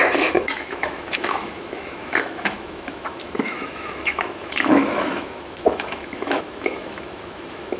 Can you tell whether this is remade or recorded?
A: remade